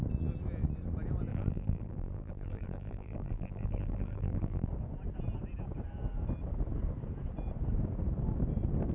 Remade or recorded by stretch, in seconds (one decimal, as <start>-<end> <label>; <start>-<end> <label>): 0.0-1.3 recorded; 1.3-4.7 remade; 4.7-8.9 recorded